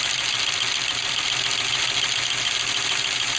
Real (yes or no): yes